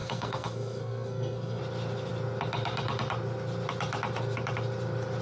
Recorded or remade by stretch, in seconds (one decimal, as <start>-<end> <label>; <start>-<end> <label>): 0.0-1.6 remade; 1.6-5.2 recorded